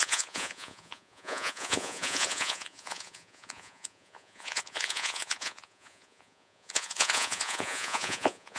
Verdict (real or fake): fake